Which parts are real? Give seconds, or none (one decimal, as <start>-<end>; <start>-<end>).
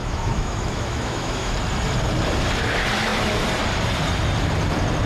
1.5-5.1